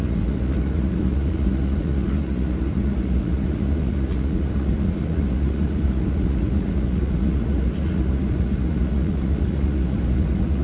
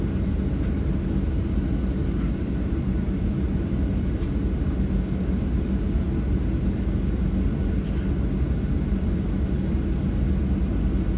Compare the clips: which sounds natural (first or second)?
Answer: second